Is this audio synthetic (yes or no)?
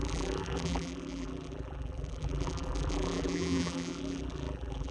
yes